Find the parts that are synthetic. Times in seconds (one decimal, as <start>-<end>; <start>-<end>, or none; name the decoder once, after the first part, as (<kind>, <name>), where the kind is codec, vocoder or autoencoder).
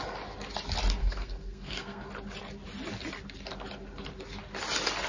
1.0-2.1 (codec, SNAC)